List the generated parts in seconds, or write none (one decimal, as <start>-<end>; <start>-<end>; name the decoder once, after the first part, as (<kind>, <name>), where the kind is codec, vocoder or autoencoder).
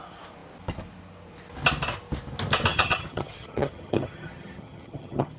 2.7-5.4 (vocoder, HiFi-GAN)